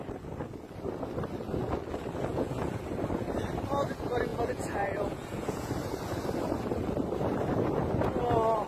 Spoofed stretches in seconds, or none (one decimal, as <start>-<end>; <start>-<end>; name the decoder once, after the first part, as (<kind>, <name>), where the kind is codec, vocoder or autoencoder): 2.3-2.8 (vocoder, Vocos); 4.3-5.7